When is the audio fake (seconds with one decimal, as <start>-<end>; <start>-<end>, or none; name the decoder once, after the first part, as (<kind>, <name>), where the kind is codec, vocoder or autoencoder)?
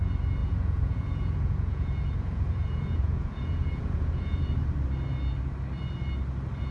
0.4-4.4 (vocoder, Vocos)